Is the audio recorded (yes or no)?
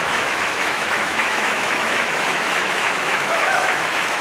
no